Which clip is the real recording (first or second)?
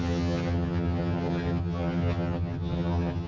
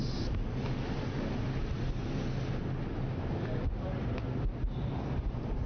second